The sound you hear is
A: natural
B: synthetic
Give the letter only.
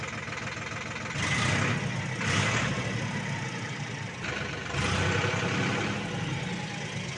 A